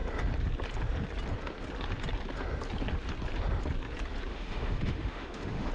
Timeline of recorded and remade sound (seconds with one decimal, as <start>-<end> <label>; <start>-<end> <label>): 0.0-4.3 recorded; 4.3-5.7 remade

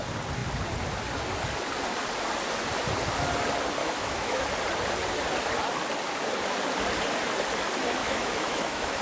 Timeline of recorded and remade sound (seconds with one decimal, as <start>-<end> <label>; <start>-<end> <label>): 0.0-3.8 recorded; 3.8-4.4 remade; 4.4-8.0 recorded; 8.0-9.0 remade